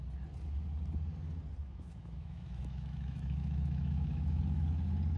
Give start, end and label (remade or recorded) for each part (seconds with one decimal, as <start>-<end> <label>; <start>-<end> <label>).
0.0-1.6 recorded; 1.6-4.4 remade; 4.4-5.2 recorded